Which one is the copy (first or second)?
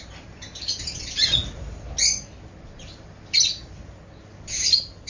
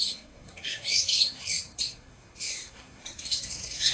second